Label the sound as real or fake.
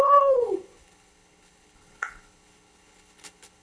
fake